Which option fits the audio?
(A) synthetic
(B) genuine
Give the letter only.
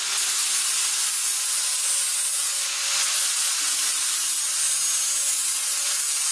B